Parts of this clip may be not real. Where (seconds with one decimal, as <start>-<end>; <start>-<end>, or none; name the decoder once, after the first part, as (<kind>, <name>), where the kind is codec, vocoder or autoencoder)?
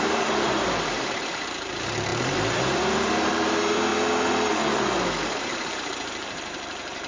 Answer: 0.0-3.9 (vocoder, BigVGAN v2); 5.4-7.1